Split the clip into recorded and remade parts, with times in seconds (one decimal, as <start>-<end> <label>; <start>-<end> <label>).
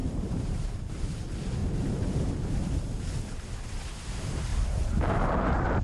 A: 0.0-0.7 remade; 0.7-5.8 recorded